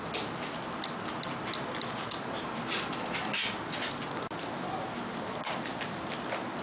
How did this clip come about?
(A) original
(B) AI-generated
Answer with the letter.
A